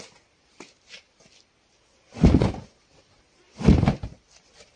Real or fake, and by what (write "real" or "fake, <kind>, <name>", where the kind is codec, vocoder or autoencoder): real